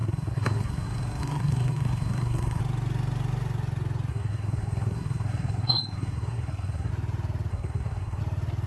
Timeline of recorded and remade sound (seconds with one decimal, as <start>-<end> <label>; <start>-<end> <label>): 0.0-2.6 remade; 2.6-4.1 recorded; 4.1-6.9 remade; 6.9-7.5 recorded; 7.5-8.2 remade; 8.2-8.7 recorded